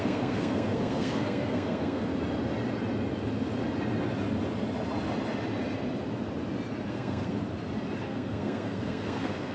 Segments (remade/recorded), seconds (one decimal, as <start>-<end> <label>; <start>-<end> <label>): 0.0-2.1 remade; 2.1-6.9 recorded; 6.9-7.4 remade; 7.4-8.0 recorded; 8.0-9.5 remade